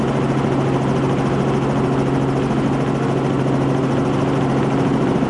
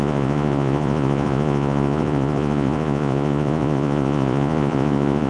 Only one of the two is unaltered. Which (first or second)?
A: first